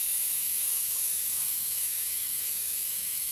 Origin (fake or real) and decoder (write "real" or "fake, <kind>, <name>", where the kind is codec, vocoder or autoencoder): fake, autoencoder, DAC-VAE